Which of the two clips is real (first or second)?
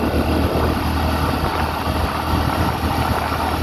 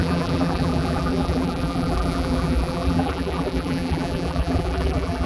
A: first